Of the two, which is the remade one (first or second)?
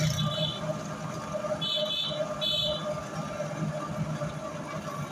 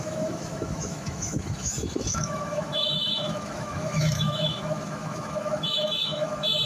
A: second